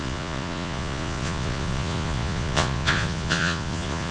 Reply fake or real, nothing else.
fake